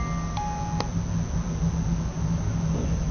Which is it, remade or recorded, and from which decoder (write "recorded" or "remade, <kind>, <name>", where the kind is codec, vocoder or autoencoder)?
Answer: recorded